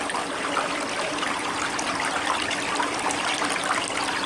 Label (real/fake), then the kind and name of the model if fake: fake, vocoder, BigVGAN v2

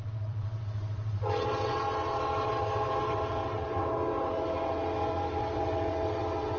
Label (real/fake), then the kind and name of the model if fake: fake, vocoder, WaveNeXt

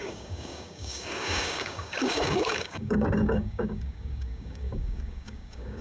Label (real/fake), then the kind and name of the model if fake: fake, codec, DAC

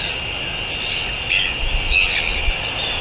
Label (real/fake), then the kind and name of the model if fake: real